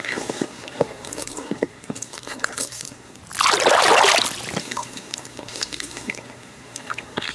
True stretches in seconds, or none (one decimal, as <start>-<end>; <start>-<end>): 3.2-4.6